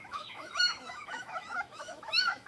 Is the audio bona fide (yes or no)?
no